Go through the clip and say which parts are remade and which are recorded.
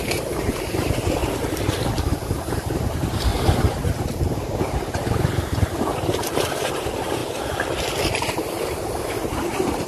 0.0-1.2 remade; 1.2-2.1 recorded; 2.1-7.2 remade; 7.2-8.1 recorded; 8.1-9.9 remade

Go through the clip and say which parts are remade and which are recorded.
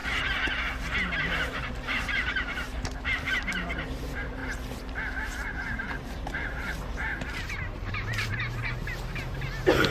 0.0-1.7 recorded; 1.7-4.4 remade; 4.4-5.1 recorded; 5.1-7.1 remade; 7.1-7.7 recorded; 7.7-9.9 remade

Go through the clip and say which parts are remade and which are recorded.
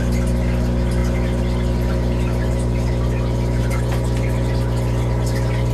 0.0-5.7 recorded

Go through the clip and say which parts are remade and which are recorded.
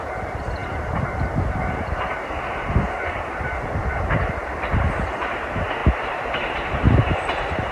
0.0-7.7 remade